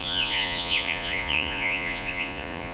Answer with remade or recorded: remade